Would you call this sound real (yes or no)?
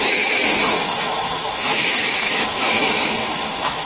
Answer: no